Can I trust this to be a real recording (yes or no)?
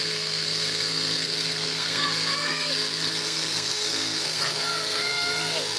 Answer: no